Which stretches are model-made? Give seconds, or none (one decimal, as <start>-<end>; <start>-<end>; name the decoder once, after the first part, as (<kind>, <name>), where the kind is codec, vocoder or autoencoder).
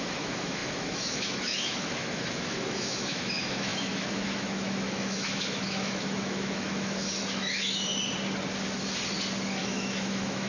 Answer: 0.0-7.9 (autoencoder, DAC-VAE); 9.6-10.5